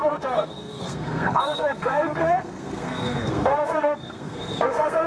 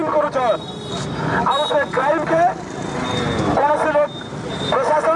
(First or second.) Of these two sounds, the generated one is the first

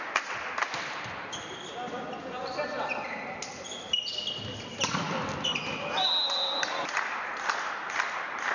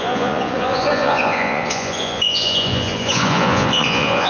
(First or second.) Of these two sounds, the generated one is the second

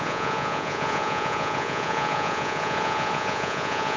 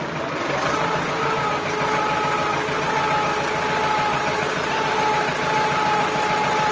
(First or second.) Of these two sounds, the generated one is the first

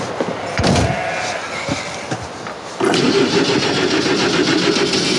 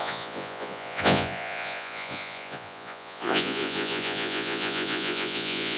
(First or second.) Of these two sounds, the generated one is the second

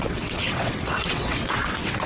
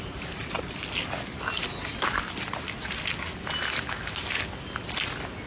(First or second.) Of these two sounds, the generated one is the first